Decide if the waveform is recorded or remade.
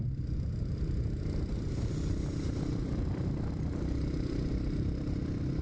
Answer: remade